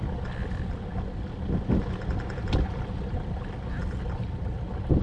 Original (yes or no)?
yes